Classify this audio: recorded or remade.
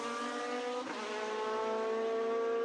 recorded